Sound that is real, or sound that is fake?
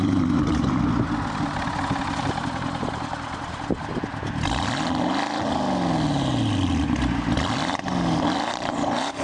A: real